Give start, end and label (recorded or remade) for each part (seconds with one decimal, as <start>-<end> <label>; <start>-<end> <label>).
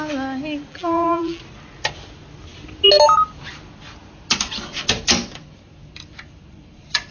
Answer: 0.0-0.7 recorded; 0.7-1.4 remade; 1.4-7.1 recorded